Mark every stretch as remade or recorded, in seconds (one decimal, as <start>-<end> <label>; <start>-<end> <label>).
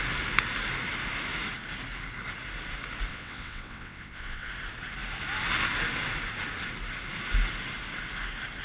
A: 0.0-3.1 recorded; 3.1-4.5 remade; 4.5-8.6 recorded